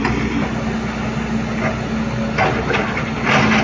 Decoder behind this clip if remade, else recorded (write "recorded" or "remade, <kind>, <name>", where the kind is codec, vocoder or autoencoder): recorded